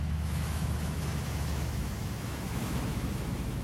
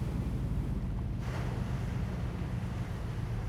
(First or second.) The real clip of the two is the second